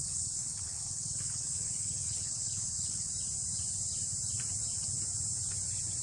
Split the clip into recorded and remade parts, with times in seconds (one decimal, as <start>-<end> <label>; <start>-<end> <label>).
0.0-3.1 remade; 3.1-6.0 recorded